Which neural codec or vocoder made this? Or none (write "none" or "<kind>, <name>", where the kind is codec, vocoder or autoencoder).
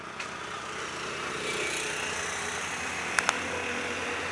none